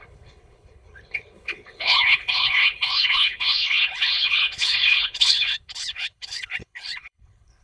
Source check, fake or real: fake